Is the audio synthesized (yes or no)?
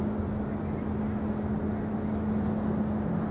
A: no